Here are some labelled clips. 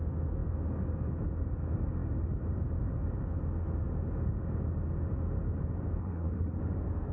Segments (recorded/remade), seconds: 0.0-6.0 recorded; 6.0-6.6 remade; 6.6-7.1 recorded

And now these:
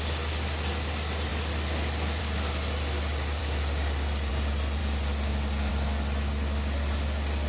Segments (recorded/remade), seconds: 0.0-7.5 recorded

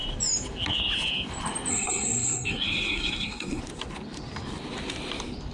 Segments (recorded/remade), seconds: 0.0-1.7 recorded; 1.7-3.6 remade; 3.6-5.5 recorded

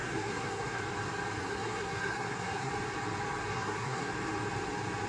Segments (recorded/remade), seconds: 0.0-0.8 remade; 0.8-1.4 recorded; 1.4-2.7 remade; 2.7-3.5 recorded; 3.5-4.1 remade; 4.1-5.1 recorded

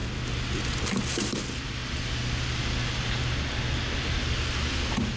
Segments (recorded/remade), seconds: 0.0-5.2 recorded